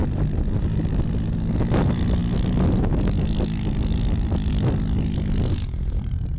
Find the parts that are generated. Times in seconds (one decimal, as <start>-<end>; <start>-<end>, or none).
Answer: 5.5-6.0